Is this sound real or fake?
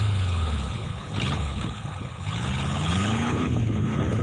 fake